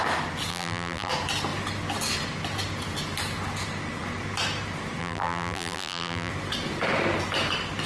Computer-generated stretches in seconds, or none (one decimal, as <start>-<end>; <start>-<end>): 0.5-1.1; 5.0-6.3

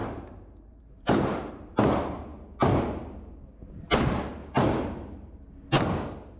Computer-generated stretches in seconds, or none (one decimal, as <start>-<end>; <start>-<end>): 0.0-1.5; 4.4-5.4

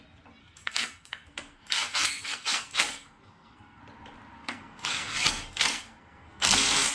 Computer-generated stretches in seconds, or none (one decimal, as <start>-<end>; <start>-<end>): 0.4-3.8; 4.4-6.9

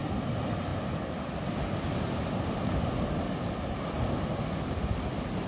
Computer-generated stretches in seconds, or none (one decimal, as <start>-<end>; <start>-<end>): none

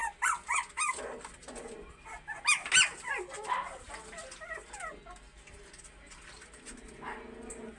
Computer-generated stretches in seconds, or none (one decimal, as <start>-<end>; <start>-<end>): none

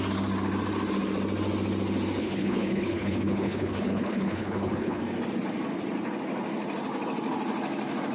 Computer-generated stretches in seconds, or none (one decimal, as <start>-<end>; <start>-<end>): 2.2-5.0